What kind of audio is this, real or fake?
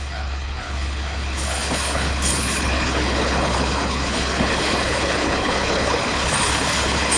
fake